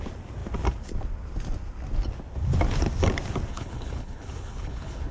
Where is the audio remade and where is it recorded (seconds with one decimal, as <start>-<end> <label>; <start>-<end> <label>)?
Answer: 0.0-3.5 recorded; 3.5-5.1 remade